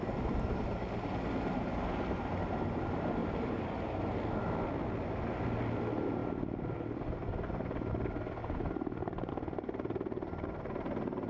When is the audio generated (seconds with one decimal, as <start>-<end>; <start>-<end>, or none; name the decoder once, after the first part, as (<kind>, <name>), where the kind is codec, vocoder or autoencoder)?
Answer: 3.2-4.2 (vocoder, BigVGAN v2); 8.4-9.3